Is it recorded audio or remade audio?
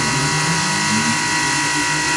recorded